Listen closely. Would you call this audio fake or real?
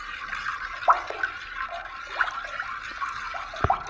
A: real